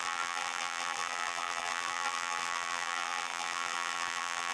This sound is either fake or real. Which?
fake